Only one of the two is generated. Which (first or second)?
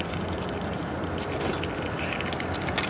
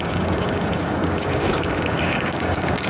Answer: second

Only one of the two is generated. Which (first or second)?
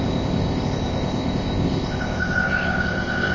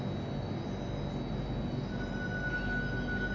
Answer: first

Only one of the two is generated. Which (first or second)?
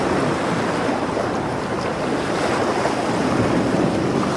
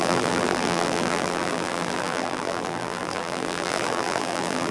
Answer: second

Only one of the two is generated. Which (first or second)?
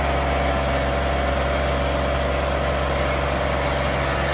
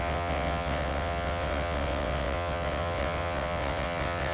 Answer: second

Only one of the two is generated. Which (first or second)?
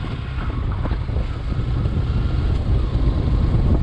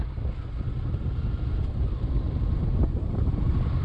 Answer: second